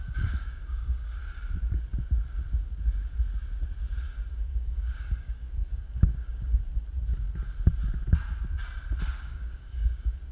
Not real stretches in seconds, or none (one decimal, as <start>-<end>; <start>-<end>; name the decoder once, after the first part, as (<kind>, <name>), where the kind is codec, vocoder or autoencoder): 0.0-1.2 (codec, DAC); 4.3-6.6; 9.1-10.3